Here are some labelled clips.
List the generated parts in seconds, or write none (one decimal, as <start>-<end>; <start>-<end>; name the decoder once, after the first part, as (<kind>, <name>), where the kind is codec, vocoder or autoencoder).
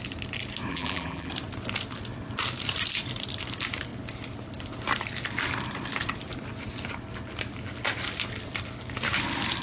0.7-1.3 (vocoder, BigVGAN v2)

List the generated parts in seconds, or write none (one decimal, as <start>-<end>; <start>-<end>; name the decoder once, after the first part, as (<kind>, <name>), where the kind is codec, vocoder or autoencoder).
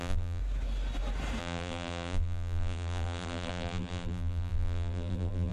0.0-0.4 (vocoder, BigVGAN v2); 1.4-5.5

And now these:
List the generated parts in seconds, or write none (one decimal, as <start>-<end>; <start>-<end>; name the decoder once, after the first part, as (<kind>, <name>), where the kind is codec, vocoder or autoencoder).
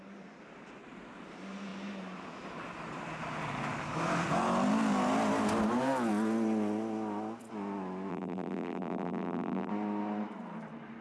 8.1-9.7 (vocoder, BigVGAN v2)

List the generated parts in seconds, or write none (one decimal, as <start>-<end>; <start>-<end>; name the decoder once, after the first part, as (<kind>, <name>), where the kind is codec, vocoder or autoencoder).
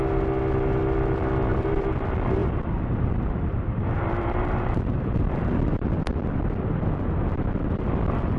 1.5-2.0 (vocoder, BigVGAN v2); 2.4-5.5